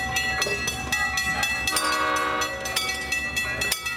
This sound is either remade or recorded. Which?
recorded